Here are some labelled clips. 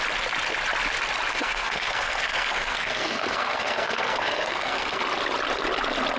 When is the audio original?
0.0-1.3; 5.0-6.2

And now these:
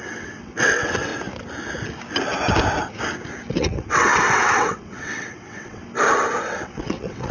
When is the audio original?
1.1-3.5; 5.8-6.4

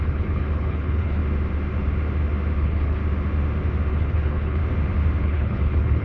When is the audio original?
1.2-2.6; 3.0-3.9; 4.6-5.2

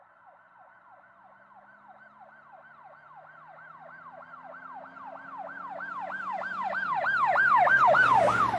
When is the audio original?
0.0-8.6

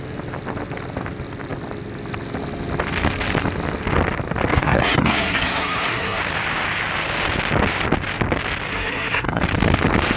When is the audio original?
0.0-4.5; 6.2-8.7; 9.4-10.2

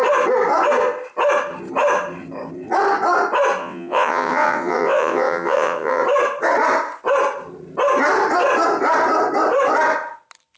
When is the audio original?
0.0-3.6; 6.0-10.6

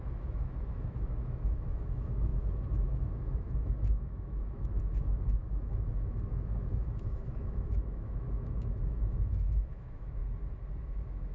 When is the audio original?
10.2-10.8

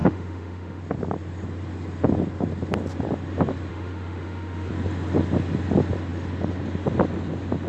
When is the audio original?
0.8-3.7; 4.7-7.7